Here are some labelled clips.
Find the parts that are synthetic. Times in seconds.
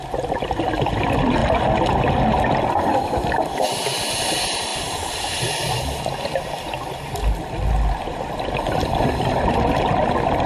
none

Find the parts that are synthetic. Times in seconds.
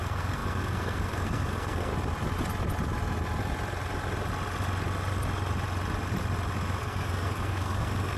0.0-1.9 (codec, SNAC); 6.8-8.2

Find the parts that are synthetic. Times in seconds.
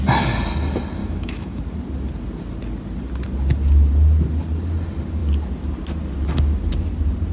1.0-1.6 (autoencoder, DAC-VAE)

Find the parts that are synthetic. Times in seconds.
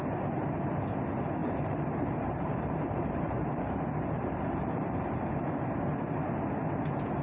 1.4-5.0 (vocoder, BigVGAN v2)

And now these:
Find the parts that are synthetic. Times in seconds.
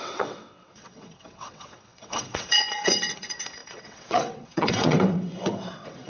0.0-6.1 (vocoder, WaveNeXt)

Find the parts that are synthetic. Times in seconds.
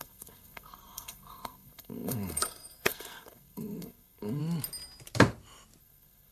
0.0-4.4 (codec, SNAC); 5.8-6.3